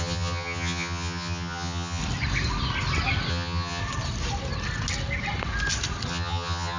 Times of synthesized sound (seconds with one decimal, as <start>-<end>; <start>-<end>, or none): 0.0-2.0; 3.3-3.8; 6.1-6.8